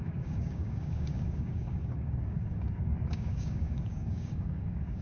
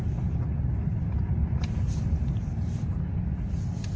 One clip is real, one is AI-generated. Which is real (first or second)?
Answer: second